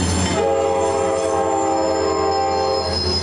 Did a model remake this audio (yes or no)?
no